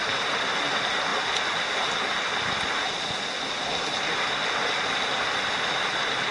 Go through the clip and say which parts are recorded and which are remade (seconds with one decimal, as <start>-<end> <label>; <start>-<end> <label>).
0.0-6.3 recorded